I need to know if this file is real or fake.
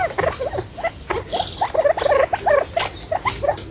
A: real